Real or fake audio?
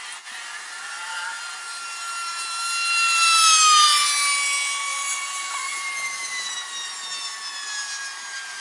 real